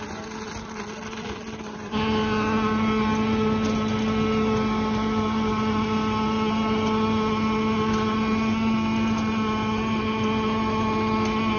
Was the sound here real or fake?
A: real